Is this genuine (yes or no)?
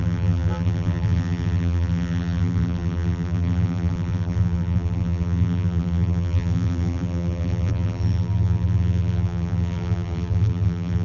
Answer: no